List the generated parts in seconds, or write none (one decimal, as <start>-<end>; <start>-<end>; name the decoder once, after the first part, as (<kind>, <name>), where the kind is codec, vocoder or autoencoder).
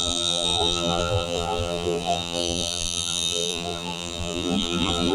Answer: 0.0-5.1 (vocoder, BigVGAN v2)